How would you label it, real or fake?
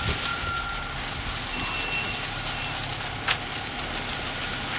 real